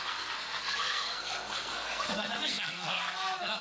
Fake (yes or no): yes